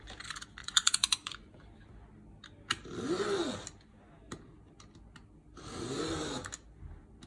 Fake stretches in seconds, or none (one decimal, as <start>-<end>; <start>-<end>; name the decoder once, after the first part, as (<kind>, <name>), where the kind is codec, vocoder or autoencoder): 0.6-1.5 (vocoder, Vocos)